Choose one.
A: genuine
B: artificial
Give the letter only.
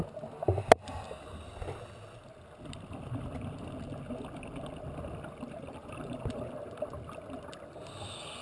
A